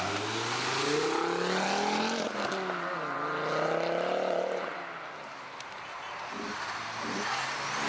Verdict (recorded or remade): recorded